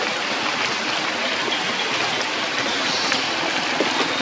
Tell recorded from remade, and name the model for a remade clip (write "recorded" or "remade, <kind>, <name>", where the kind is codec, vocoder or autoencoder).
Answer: recorded